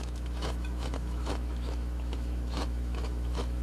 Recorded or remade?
remade